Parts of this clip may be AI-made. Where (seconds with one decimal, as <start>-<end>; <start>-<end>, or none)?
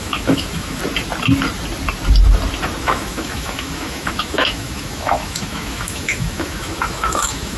0.0-0.8; 2.8-7.6